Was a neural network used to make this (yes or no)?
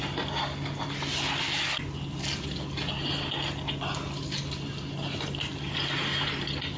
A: no